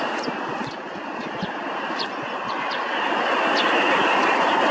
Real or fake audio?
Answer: real